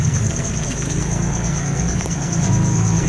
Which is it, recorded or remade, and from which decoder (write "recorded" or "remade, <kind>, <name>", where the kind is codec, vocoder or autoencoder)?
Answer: remade, codec, SNAC